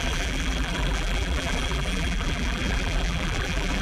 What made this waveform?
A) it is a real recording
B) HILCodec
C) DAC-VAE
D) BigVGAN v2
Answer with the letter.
D